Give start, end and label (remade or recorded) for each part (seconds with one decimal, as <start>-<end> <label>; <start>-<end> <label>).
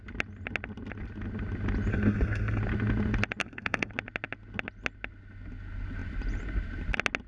0.0-1.9 recorded; 1.9-2.6 remade; 2.6-3.4 recorded; 3.4-3.9 remade; 3.9-7.3 recorded